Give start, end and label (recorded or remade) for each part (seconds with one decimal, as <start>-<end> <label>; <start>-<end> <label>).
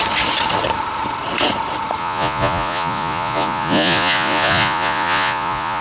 0.0-2.0 recorded; 2.0-5.8 remade